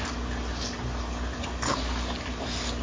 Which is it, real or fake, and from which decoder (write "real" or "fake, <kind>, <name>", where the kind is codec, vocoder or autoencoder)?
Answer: real